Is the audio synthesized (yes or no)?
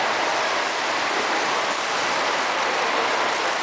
no